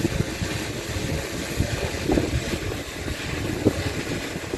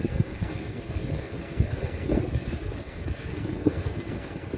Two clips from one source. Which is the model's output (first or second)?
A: second